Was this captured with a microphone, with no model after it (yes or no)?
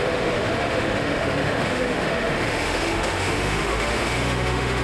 no